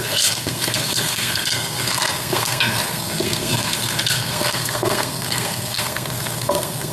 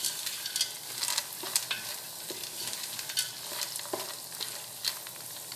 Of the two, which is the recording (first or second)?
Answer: second